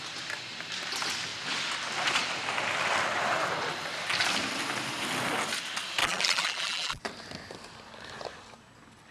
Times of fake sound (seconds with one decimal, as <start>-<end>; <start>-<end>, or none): 6.0-7.0